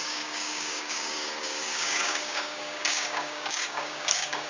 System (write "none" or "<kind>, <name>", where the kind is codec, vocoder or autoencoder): codec, DAC